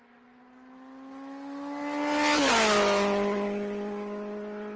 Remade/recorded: recorded